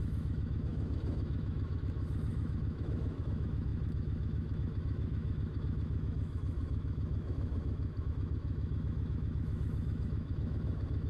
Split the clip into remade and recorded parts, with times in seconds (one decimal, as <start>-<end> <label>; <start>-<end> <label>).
0.0-11.1 remade

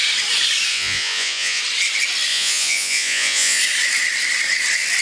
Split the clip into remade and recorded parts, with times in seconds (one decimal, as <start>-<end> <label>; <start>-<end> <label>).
0.0-0.7 recorded; 0.7-1.6 remade; 1.6-2.3 recorded; 2.3-3.6 remade; 3.6-5.0 recorded